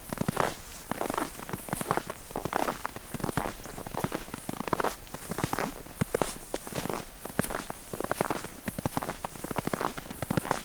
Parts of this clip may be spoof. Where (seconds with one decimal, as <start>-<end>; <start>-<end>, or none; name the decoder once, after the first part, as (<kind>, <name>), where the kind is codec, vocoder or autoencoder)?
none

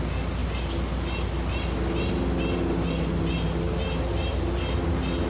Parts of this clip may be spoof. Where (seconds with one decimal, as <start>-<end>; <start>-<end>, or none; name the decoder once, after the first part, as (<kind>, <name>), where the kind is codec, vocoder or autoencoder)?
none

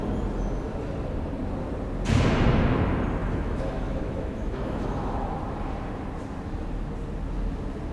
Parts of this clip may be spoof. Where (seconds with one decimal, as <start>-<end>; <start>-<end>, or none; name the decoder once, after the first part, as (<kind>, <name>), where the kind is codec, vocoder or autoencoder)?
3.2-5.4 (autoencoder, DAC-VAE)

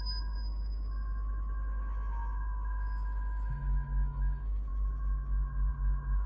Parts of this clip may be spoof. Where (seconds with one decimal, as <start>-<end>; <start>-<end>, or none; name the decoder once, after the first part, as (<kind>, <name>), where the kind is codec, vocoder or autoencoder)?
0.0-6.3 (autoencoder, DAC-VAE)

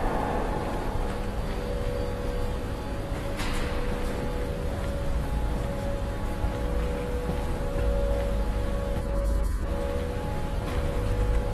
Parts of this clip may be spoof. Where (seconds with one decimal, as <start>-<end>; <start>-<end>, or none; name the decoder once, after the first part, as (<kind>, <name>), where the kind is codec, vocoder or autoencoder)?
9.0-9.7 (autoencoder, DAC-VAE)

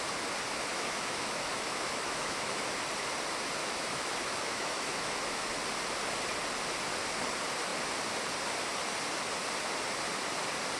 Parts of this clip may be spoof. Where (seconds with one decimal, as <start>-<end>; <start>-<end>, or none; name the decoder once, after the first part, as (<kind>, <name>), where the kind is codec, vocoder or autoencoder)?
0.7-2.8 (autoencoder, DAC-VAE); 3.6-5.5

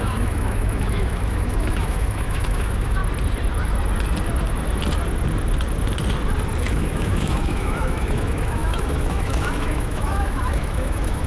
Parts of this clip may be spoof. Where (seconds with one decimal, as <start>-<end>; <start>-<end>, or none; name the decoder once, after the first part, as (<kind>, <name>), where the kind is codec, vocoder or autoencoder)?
0.0-3.0 (autoencoder, DAC-VAE); 6.7-11.3